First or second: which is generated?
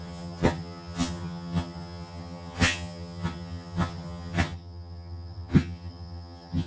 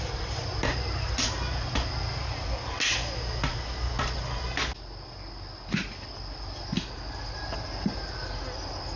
first